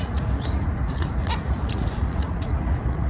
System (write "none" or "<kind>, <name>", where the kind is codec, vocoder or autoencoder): vocoder, Vocos